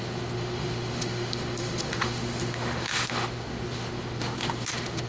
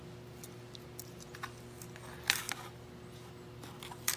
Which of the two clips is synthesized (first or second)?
first